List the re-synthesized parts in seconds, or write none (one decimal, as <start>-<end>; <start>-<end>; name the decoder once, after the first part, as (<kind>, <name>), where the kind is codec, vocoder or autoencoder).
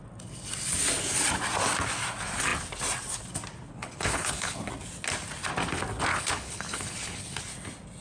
3.7-4.7 (codec, HILCodec); 6.1-7.4